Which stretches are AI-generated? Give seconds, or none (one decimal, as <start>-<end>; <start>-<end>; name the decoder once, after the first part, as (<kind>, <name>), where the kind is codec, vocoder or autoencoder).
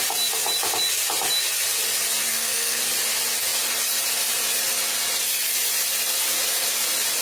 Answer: 2.3-2.8 (codec, SNAC)